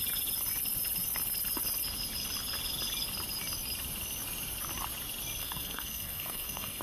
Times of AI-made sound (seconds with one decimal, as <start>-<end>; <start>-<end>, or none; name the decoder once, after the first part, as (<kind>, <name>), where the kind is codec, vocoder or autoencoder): 5.4-6.8 (codec, SNAC)